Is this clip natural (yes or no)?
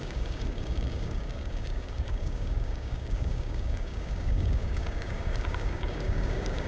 no